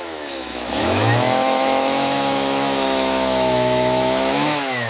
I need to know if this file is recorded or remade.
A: remade